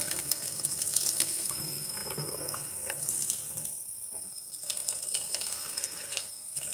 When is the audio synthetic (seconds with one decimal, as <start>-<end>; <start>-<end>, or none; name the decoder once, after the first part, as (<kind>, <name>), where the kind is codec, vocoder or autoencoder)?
0.0-6.7 (codec, SNAC)